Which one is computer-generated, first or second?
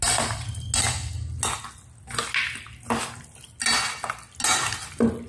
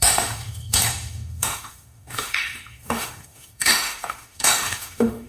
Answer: second